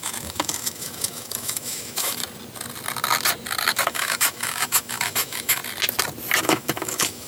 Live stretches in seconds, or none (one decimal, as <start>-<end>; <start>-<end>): 2.2-3.9; 5.6-6.4